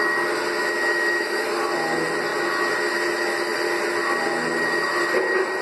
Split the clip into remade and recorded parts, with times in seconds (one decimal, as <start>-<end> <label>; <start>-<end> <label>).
0.0-0.6 recorded; 0.6-1.6 remade; 1.6-5.6 recorded